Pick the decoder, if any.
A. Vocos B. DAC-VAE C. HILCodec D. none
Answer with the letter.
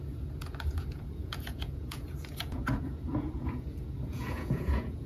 A